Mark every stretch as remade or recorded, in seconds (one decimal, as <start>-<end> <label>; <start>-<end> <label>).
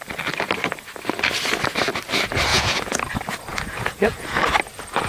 0.0-2.5 recorded; 2.5-3.0 remade; 3.0-3.5 recorded; 3.5-4.4 remade; 4.4-5.1 recorded